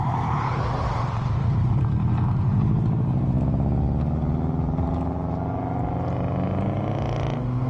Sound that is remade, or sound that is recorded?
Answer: recorded